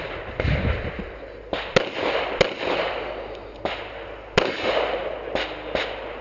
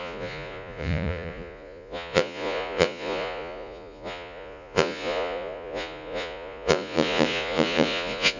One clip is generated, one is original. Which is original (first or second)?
first